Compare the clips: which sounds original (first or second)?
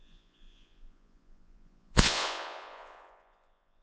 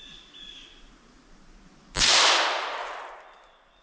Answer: second